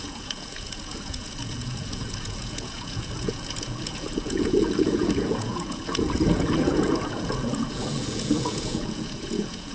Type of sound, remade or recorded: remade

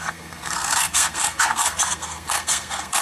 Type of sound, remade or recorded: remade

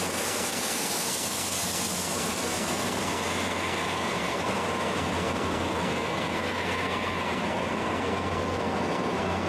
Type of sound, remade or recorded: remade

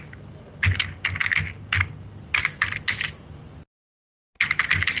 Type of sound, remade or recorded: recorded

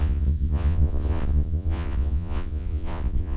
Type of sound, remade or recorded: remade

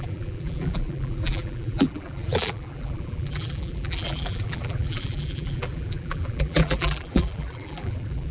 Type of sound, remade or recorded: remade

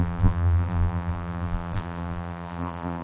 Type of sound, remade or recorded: remade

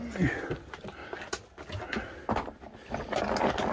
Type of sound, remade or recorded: recorded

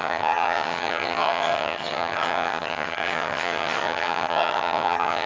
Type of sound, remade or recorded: remade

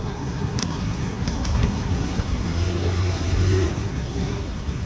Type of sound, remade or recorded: remade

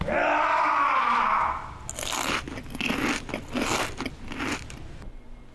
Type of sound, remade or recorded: recorded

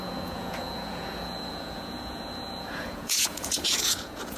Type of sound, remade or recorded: remade